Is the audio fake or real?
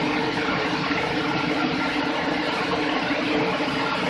real